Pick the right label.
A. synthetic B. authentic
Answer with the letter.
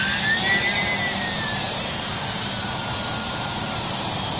A